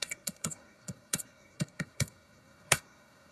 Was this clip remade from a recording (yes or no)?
yes